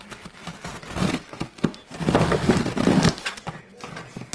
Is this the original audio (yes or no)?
yes